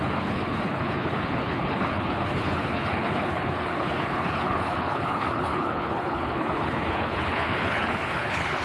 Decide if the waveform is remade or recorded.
remade